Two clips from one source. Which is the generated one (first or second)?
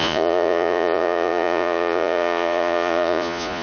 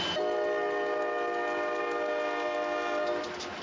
first